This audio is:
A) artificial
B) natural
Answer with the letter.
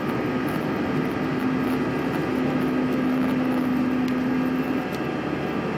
B